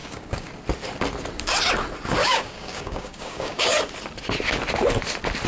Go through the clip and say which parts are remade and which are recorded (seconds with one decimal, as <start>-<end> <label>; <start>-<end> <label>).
0.0-0.5 remade; 0.5-2.2 recorded; 2.2-3.7 remade; 3.7-5.5 recorded